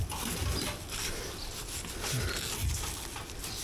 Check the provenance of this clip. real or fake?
real